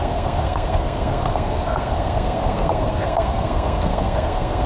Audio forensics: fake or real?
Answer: fake